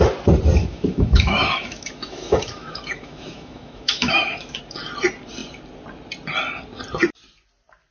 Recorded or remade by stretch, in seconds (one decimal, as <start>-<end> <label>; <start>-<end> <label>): 0.0-0.6 recorded; 0.6-4.6 remade; 4.6-7.9 recorded